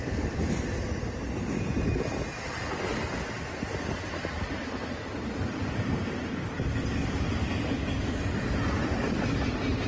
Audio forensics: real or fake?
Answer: real